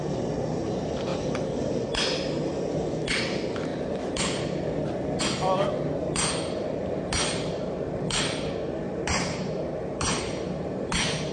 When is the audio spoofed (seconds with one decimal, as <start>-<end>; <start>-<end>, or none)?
none